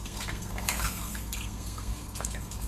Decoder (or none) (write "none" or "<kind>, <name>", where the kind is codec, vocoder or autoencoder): codec, SNAC